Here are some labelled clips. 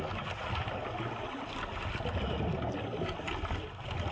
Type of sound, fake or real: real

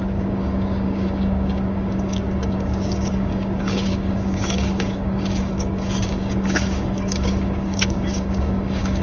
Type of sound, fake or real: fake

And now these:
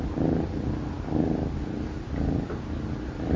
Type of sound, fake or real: real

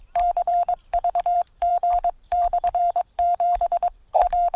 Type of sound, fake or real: fake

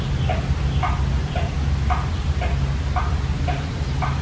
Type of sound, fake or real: real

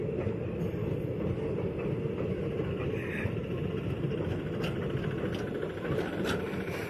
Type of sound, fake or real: real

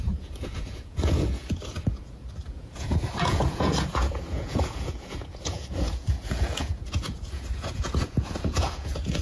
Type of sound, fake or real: fake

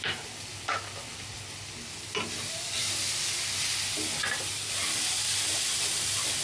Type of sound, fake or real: fake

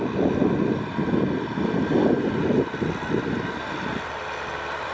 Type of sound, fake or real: real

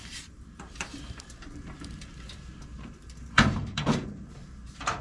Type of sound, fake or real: fake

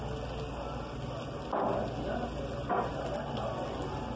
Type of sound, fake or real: real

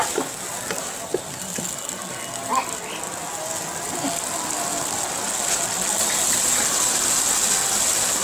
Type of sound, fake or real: real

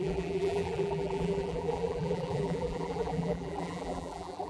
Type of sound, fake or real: fake